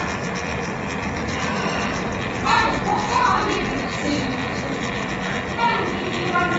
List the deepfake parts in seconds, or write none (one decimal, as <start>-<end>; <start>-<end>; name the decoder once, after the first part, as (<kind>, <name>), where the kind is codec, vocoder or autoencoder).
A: none